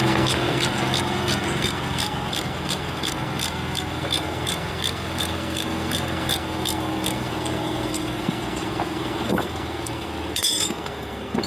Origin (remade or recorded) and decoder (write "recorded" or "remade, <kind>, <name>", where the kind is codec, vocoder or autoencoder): remade, codec, SNAC